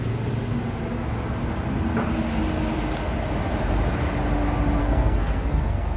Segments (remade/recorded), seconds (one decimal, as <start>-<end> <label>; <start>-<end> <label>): 0.0-4.8 recorded; 4.8-6.0 remade